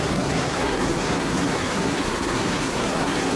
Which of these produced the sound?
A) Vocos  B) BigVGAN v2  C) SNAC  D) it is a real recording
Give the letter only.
C